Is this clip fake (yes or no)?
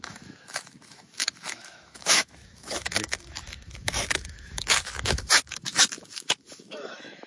yes